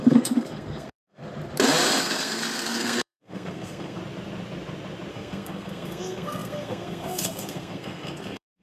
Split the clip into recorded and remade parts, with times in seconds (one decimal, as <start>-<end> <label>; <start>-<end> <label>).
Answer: 0.0-1.2 remade; 1.2-2.0 recorded; 2.0-4.0 remade; 4.0-5.1 recorded; 5.1-8.6 remade